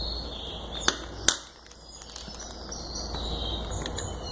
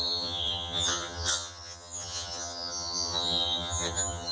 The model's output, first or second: second